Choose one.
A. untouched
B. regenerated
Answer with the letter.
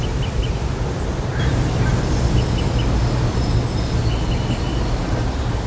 A